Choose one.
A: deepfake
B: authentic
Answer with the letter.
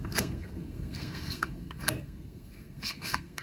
A